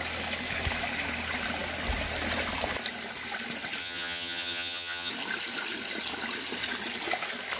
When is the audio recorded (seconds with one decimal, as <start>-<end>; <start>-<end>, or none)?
0.0-3.8; 5.1-7.6